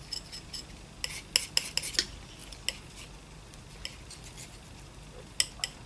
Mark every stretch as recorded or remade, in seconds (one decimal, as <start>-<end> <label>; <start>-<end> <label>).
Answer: 0.0-5.9 recorded